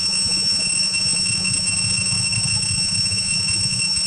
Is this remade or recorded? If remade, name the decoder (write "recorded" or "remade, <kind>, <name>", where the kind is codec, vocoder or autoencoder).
remade, vocoder, Vocos